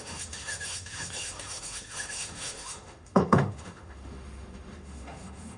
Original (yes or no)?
no